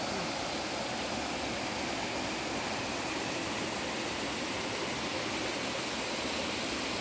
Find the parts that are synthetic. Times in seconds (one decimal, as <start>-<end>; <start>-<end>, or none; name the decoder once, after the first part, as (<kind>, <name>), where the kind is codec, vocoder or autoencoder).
none

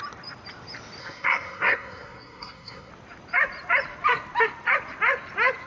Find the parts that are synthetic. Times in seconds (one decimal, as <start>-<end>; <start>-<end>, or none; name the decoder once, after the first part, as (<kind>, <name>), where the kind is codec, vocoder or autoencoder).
1.0-2.9 (codec, SNAC)

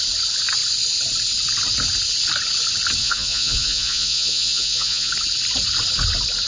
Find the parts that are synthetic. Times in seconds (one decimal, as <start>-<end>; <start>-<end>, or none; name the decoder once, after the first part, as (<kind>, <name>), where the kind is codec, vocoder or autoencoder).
3.0-5.1 (vocoder, Vocos)

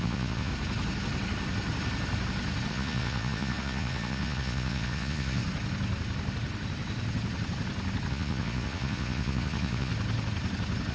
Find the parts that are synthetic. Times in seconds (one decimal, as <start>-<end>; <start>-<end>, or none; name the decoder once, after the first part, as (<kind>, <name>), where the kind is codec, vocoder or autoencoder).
0.0-0.5 (vocoder, Vocos); 2.7-5.4; 8.1-9.9

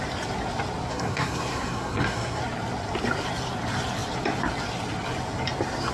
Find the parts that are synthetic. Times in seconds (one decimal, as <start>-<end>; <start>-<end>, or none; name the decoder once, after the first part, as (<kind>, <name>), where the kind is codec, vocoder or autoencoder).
0.9-2.4 (codec, SNAC)

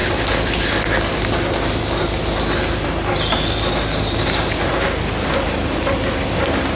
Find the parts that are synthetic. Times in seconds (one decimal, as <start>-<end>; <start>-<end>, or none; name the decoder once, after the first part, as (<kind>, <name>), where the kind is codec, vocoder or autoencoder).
none

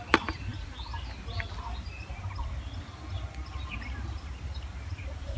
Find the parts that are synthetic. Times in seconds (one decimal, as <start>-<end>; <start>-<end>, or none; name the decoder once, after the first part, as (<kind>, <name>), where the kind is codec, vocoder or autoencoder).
none

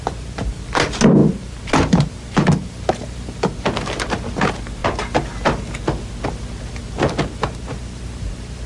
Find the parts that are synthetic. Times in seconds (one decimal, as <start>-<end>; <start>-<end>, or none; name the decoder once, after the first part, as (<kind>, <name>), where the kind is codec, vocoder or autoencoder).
none